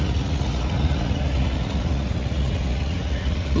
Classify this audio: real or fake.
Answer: fake